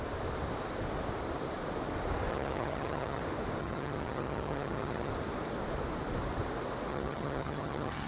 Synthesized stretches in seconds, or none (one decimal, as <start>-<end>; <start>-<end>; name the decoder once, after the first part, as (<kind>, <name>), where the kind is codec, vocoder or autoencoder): 2.3-3.2 (vocoder, HiFi-GAN); 3.6-5.1; 6.9-8.1